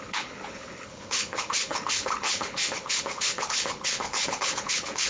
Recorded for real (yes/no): no